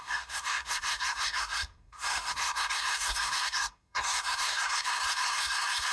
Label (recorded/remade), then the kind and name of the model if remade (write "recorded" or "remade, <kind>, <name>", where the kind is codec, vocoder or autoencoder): remade, codec, SNAC